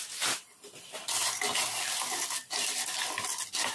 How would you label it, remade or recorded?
recorded